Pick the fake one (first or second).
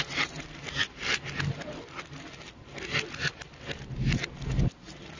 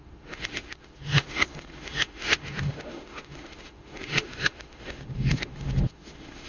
second